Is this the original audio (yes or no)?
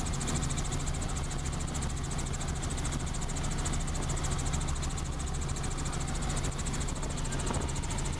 yes